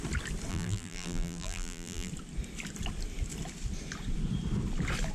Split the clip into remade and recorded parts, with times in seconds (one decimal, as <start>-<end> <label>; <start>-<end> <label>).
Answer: 0.0-0.5 recorded; 0.5-2.1 remade; 2.1-5.1 recorded